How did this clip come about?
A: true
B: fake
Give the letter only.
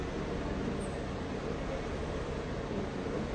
A